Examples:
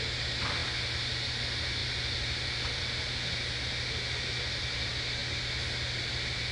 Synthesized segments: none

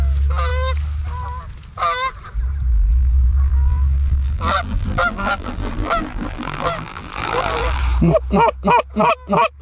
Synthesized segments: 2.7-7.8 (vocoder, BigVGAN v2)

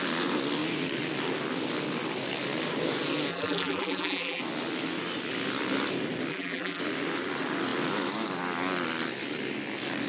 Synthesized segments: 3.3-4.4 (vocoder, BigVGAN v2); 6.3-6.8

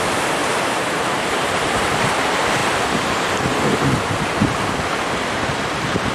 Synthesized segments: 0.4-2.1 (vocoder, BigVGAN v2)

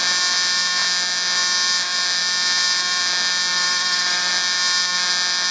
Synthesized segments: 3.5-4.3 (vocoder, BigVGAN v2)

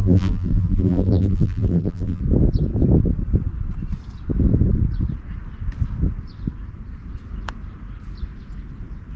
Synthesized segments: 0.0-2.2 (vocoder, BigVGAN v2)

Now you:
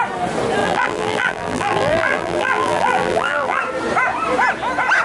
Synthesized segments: 0.6-3.6 (vocoder, BigVGAN v2)